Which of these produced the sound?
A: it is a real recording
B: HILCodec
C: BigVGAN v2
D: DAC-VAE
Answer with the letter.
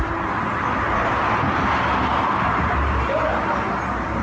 C